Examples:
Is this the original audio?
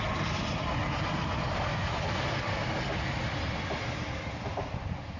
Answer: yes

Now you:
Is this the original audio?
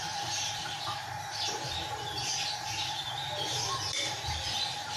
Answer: no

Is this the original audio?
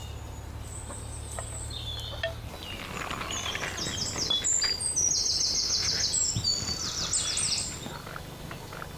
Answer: yes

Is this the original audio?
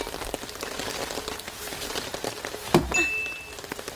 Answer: yes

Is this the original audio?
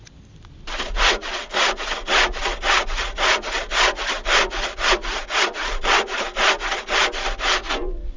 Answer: yes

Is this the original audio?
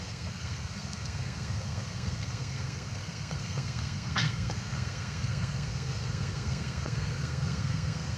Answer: no